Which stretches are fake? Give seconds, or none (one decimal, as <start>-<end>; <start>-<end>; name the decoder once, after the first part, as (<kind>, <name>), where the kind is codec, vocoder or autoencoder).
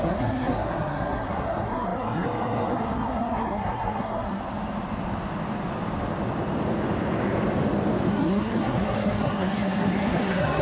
0.0-4.4 (codec, SNAC); 8.1-10.6